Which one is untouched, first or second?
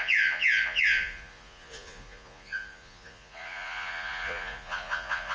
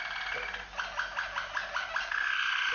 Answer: second